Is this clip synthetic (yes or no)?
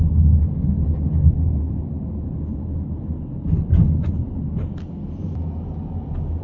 no